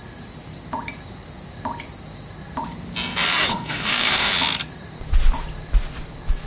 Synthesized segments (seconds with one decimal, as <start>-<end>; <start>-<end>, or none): 3.5-4.3